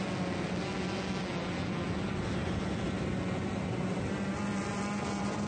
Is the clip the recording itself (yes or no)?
yes